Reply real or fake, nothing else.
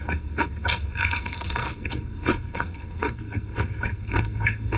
fake